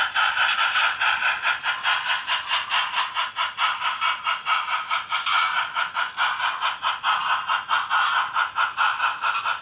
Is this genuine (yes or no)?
yes